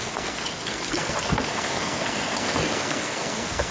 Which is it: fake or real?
fake